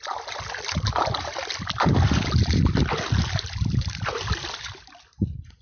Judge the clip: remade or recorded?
remade